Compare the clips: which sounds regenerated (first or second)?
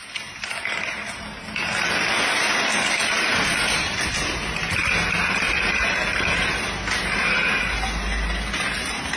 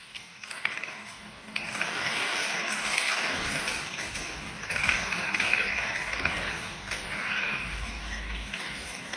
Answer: second